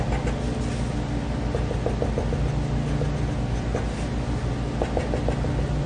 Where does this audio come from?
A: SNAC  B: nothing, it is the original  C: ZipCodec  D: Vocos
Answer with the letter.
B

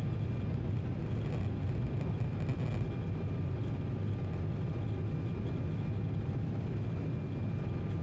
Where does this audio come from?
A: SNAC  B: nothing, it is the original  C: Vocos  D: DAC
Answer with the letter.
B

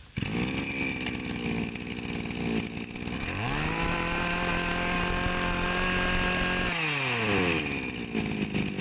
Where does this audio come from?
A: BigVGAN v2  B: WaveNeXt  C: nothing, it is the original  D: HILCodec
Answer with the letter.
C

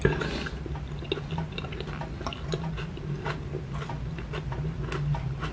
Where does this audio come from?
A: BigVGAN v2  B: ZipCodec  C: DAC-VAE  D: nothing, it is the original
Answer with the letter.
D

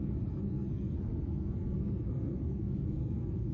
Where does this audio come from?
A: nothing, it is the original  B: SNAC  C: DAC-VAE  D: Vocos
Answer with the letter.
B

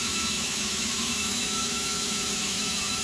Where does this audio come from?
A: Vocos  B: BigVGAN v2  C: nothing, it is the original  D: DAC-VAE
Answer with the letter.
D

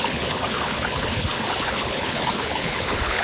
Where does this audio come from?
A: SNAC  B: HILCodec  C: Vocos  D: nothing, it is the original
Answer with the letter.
B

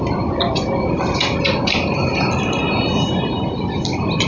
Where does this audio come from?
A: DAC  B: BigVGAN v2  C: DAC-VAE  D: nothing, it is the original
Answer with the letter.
D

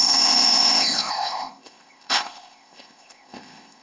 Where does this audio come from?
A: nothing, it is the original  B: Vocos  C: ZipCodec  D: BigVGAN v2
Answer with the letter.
C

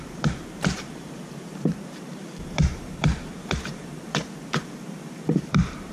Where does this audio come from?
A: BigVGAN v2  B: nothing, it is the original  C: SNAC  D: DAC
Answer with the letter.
A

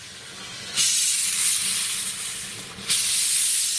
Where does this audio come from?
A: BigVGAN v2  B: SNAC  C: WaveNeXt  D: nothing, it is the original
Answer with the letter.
D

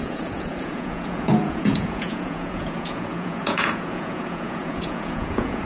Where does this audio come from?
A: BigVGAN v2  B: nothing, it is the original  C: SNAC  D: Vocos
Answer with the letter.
D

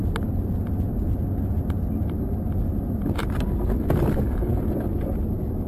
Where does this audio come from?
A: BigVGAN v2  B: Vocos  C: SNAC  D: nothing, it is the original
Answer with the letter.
D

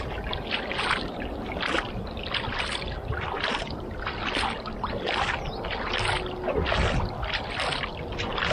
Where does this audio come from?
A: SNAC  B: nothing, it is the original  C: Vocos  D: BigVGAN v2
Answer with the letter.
B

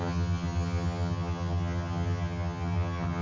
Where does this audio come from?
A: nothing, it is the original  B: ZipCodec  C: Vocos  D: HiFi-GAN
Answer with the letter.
D